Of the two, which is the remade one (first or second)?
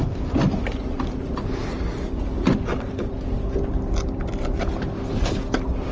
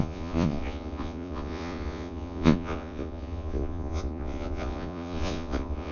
second